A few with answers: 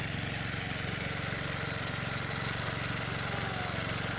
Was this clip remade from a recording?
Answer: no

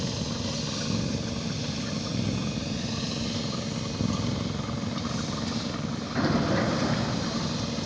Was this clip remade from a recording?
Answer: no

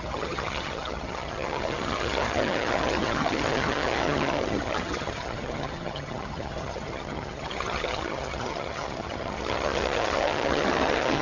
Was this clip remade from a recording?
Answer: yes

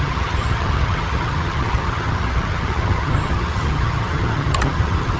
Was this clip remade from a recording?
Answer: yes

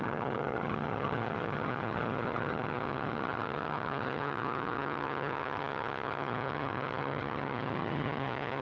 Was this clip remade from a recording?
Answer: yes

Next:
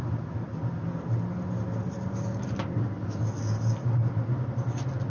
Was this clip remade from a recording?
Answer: no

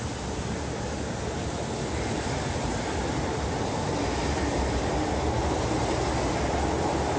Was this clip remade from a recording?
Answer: no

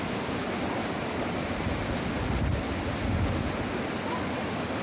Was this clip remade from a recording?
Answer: no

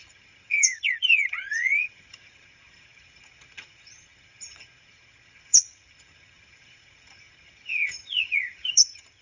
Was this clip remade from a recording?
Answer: yes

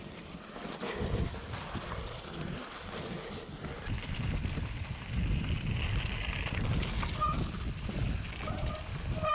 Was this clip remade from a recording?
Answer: no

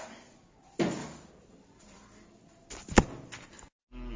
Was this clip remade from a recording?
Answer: no